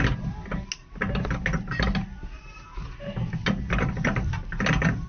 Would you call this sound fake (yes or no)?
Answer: no